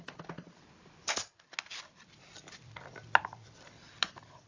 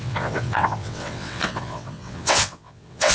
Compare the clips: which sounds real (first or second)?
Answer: first